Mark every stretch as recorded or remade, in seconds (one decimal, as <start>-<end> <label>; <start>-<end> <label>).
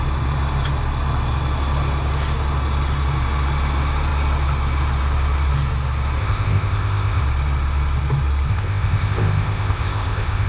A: 0.0-6.2 recorded; 6.2-7.2 remade; 7.2-8.5 recorded; 8.5-10.5 remade